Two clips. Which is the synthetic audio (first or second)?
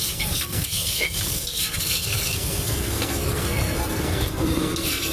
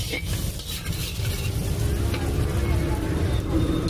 first